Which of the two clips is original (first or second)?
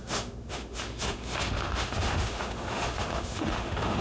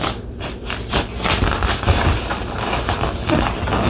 second